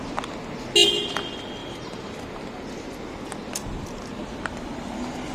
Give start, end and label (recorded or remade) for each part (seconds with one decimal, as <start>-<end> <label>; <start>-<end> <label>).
0.0-1.6 recorded; 1.6-2.2 remade; 2.2-5.3 recorded